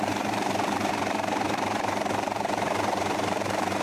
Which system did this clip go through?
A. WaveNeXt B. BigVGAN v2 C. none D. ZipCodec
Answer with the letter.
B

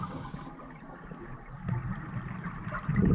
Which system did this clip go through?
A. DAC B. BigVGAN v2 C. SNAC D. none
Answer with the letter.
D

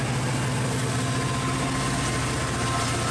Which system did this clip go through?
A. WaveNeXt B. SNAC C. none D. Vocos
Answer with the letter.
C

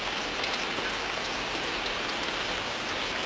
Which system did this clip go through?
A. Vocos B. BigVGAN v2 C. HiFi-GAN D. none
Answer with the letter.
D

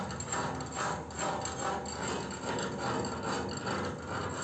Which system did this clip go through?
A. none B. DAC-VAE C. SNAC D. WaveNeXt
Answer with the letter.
A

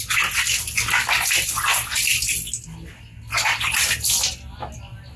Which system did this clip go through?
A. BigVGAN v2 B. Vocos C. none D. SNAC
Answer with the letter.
C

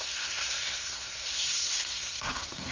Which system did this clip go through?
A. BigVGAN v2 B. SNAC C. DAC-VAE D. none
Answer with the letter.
B